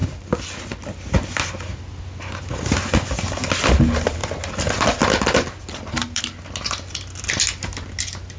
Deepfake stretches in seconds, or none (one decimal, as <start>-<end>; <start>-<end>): 0.0-2.0; 4.2-6.2